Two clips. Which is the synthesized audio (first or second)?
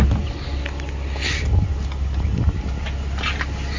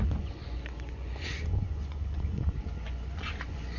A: second